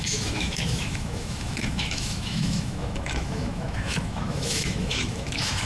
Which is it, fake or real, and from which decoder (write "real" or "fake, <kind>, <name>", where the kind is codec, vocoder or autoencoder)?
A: fake, autoencoder, DAC-VAE